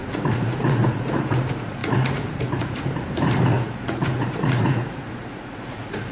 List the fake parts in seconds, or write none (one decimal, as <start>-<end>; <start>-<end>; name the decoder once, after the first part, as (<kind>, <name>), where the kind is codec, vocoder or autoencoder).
0.0-6.1 (vocoder, Vocos)